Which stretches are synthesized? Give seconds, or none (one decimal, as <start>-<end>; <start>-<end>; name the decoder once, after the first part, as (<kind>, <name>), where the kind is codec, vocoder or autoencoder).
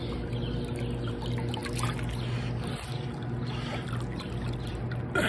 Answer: none